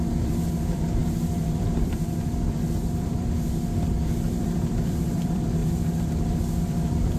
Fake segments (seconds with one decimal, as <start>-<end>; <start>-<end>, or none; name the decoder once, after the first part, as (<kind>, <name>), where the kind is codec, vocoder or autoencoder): 0.0-5.6 (vocoder, BigVGAN v2); 6.6-7.2